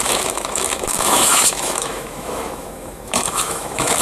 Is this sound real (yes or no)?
no